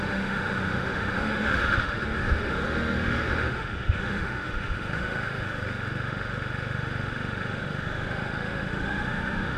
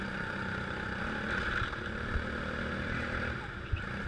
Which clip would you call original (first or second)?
second